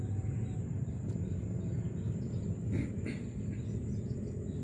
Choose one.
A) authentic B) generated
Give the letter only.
A